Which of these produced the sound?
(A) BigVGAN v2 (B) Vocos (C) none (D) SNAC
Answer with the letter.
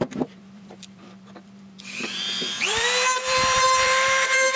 A